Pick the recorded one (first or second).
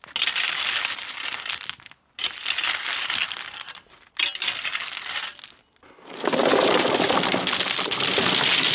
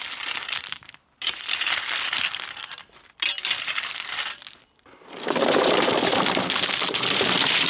first